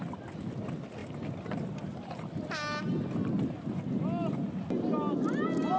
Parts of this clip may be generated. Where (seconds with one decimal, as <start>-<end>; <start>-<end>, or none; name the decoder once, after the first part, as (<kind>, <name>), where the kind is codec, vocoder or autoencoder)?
none